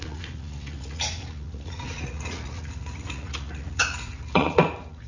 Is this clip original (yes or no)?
no